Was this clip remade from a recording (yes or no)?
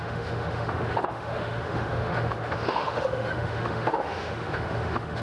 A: yes